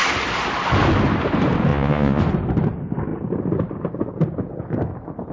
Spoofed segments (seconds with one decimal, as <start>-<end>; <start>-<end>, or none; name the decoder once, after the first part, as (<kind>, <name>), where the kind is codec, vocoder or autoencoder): 1.7-2.2 (vocoder, Vocos)